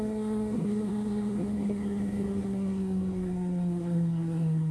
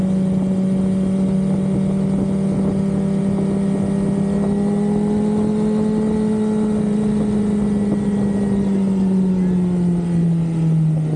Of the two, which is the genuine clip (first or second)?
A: second